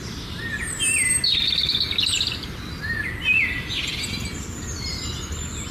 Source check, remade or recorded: recorded